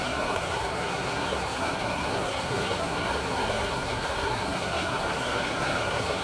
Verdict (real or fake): fake